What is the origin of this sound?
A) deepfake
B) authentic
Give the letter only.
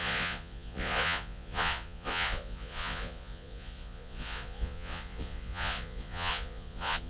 A